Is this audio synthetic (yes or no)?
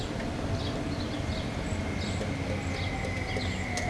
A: no